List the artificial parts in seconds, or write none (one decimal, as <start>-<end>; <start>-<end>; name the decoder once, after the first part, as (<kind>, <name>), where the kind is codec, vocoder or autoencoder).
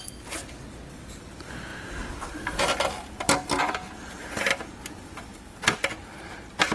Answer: none